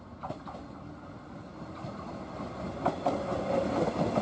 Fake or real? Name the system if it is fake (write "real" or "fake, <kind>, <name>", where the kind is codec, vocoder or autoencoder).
real